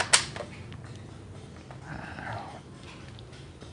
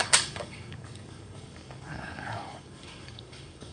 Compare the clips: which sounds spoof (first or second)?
second